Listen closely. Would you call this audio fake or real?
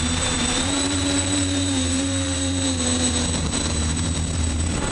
fake